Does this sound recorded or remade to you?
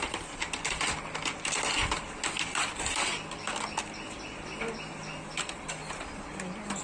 recorded